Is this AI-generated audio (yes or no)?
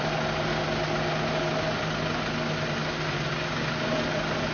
no